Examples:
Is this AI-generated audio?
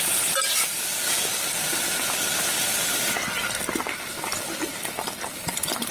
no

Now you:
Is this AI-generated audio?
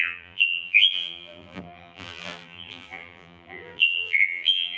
yes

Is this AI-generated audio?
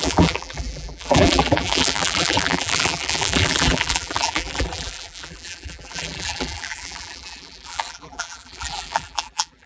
yes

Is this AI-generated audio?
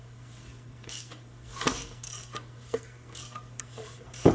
yes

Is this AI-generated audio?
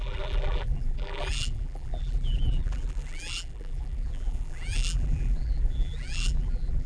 yes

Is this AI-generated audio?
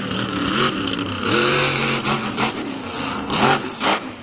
yes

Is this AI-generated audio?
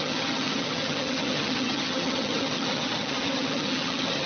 yes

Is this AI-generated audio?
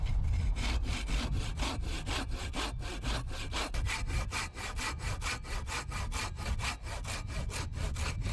no